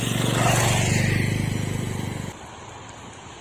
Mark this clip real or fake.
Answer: real